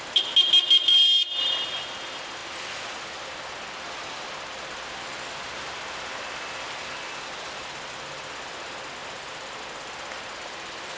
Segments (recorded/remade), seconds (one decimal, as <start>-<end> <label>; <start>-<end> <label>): 0.0-0.9 recorded; 0.9-1.4 remade; 1.4-9.0 recorded; 9.0-9.6 remade; 9.6-11.0 recorded